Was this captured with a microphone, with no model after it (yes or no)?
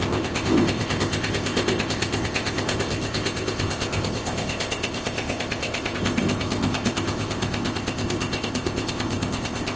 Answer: no